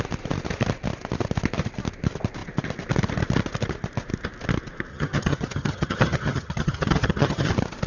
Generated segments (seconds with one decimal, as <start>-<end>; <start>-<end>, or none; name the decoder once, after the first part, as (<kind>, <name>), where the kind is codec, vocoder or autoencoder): 4.9-7.5 (vocoder, HiFi-GAN)